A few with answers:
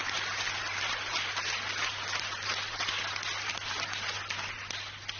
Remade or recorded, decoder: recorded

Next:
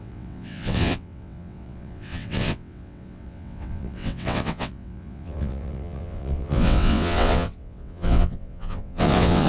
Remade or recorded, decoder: remade, vocoder, WaveNeXt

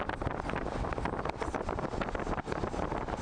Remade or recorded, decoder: recorded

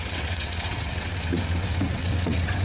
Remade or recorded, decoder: remade, vocoder, WaveNeXt